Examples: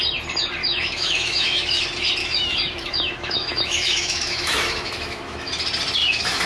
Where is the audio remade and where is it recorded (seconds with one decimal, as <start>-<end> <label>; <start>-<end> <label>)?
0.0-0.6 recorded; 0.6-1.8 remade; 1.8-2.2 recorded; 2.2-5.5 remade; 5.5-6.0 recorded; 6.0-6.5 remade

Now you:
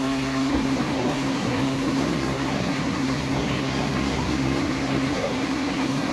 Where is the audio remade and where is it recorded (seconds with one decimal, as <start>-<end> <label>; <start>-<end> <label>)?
0.0-6.1 remade

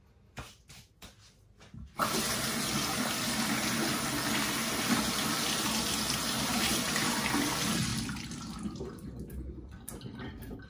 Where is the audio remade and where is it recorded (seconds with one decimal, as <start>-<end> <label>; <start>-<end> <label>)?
0.0-10.7 recorded

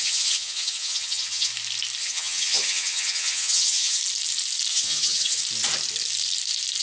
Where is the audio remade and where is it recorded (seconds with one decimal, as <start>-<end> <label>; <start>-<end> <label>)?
0.0-1.5 remade; 1.5-2.0 recorded; 2.0-4.0 remade; 4.0-4.7 recorded; 4.7-5.4 remade; 5.4-6.8 recorded

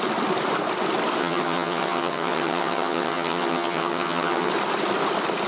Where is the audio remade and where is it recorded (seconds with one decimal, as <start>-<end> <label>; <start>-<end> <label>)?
0.0-1.2 recorded; 1.2-4.5 remade; 4.5-5.5 recorded

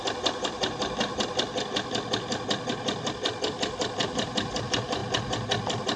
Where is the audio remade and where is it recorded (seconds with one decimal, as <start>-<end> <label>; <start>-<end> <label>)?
0.0-6.0 recorded